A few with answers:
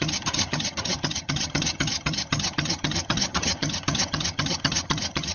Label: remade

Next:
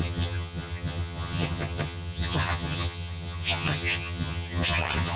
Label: remade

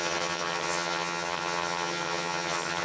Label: remade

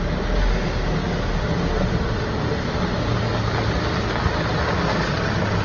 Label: recorded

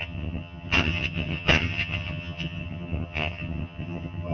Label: remade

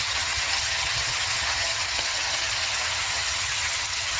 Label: remade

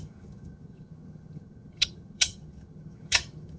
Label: remade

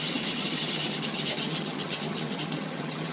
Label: remade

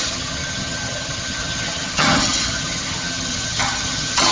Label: remade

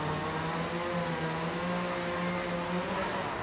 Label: recorded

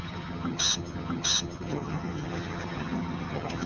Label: remade